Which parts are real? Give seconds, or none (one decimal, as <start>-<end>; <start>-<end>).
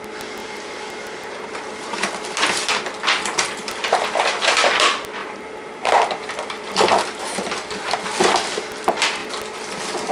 0.0-0.4; 2.1-5.2; 6.7-10.1